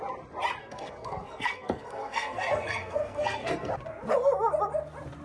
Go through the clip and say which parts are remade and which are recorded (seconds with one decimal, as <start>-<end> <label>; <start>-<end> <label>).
0.0-0.6 recorded; 0.6-3.7 remade; 3.7-5.2 recorded